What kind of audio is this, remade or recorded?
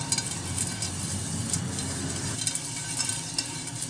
recorded